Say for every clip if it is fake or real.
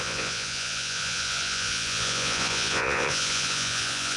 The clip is fake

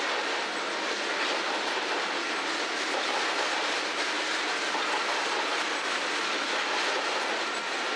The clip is real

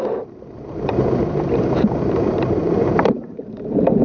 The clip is fake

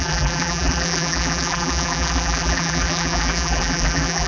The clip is fake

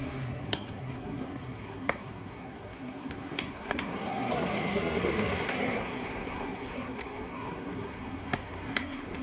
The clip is fake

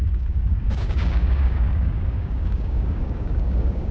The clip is fake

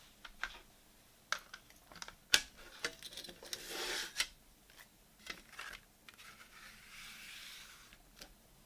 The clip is real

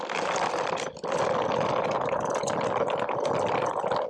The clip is fake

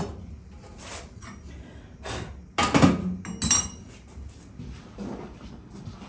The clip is real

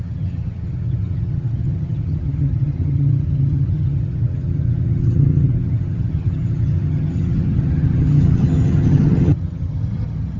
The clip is fake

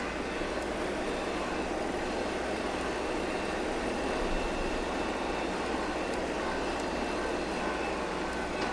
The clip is real